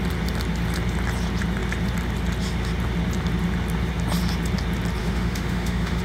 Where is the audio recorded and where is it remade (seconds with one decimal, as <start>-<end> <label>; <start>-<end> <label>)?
0.0-5.0 recorded; 5.0-6.0 remade